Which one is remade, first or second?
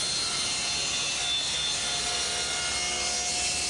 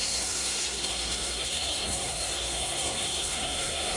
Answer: second